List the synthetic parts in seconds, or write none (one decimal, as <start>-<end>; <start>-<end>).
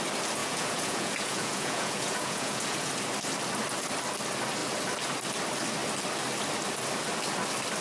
0.4-2.9